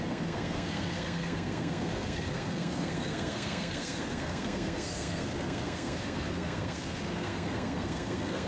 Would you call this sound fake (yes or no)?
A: yes